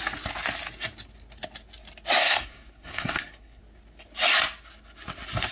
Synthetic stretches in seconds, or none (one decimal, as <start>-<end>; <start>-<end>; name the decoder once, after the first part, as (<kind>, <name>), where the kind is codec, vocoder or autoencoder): 2.2-3.6 (codec, SNAC)